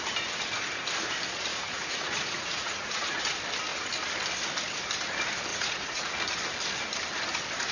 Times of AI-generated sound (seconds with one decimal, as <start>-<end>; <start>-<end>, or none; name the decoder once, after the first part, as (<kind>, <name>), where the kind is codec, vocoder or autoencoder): 1.5-3.2 (vocoder, Vocos); 5.5-6.1